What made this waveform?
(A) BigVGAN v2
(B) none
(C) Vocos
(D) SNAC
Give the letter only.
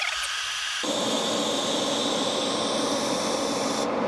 B